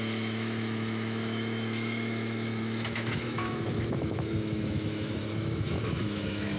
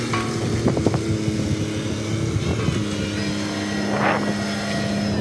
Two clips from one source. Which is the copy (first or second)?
first